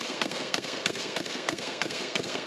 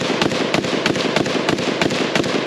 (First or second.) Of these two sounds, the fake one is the first